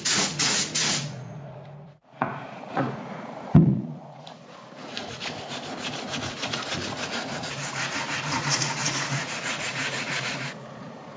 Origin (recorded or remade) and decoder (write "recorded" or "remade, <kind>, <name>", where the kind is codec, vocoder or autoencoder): remade, vocoder, Vocos